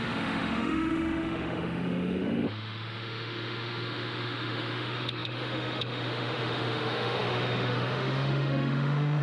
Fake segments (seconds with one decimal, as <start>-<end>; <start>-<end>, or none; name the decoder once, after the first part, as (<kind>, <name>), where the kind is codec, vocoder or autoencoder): 0.0-9.2 (autoencoder, DAC-VAE)